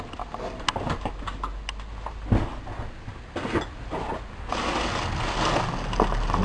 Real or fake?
real